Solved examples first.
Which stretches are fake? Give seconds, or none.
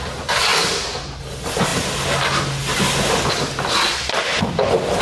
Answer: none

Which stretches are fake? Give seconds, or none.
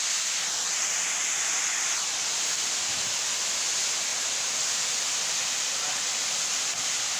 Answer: none